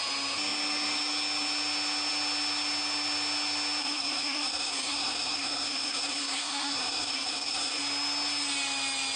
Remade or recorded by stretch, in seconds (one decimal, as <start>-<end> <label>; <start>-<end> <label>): 0.0-3.8 recorded; 3.8-7.8 remade; 7.8-9.2 recorded

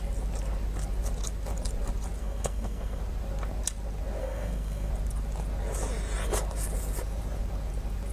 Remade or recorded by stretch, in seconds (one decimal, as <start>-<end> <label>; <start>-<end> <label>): 0.0-2.2 recorded; 2.2-3.0 remade; 3.0-4.2 recorded; 4.2-4.9 remade; 4.9-8.1 recorded

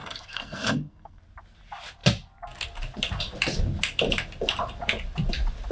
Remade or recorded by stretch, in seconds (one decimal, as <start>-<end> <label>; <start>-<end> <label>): 0.0-1.2 remade; 1.2-5.7 recorded

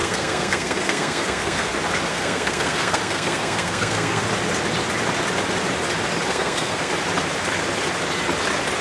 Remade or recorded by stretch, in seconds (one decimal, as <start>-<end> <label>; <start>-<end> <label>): 0.0-1.7 remade; 1.7-2.1 recorded; 2.1-4.2 remade; 4.2-6.3 recorded; 6.3-6.9 remade; 6.9-8.8 recorded